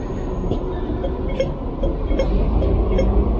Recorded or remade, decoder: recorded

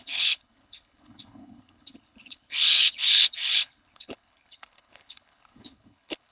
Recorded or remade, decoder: remade, codec, HILCodec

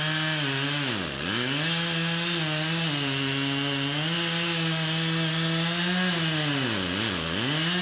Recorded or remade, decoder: recorded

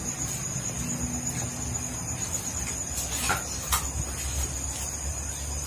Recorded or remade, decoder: recorded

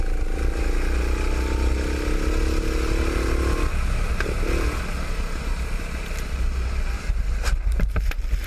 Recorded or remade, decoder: recorded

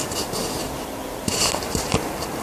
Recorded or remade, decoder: recorded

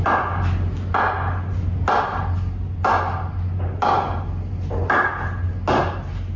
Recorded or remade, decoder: recorded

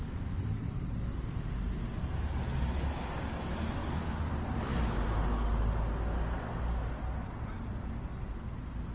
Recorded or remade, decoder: recorded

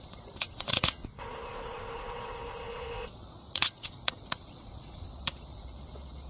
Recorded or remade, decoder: remade, vocoder, Vocos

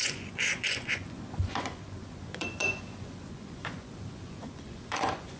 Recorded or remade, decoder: remade, vocoder, Vocos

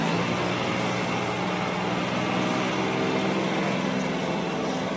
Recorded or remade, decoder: recorded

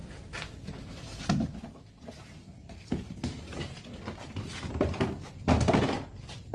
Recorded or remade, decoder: recorded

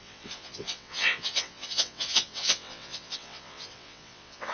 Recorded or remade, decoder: remade, vocoder, WaveNeXt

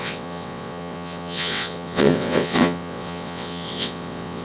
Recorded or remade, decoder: remade, vocoder, WaveNeXt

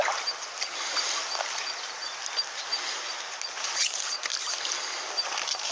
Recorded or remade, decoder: recorded